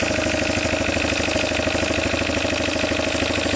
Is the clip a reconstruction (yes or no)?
no